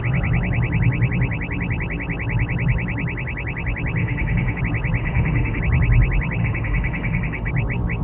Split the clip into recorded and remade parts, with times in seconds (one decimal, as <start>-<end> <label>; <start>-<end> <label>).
0.0-4.0 recorded; 4.0-4.6 remade; 4.6-5.0 recorded; 5.0-5.6 remade; 5.6-6.4 recorded; 6.4-7.5 remade; 7.5-8.0 recorded